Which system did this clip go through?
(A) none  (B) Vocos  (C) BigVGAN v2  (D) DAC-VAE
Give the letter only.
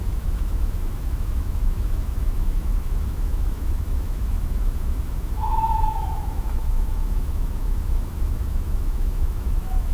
D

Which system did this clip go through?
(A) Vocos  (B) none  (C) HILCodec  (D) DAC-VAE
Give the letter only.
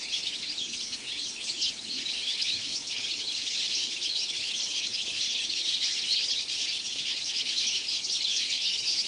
C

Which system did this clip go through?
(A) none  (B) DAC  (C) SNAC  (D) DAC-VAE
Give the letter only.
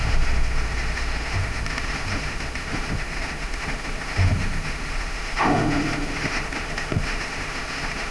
D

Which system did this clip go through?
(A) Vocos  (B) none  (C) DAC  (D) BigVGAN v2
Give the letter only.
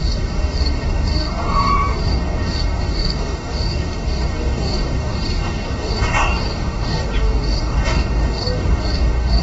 C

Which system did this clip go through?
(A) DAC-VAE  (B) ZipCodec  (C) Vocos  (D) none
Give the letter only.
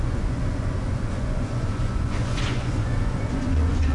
C